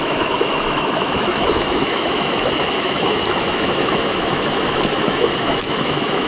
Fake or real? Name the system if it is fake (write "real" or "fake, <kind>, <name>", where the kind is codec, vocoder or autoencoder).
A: fake, autoencoder, DAC-VAE